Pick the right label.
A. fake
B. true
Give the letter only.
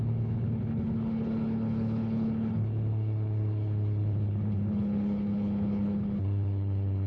A